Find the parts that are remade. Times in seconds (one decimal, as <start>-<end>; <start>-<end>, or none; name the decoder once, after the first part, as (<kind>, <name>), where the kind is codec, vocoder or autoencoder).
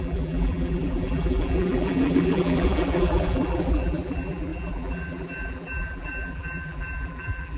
0.0-7.6 (vocoder, BigVGAN v2)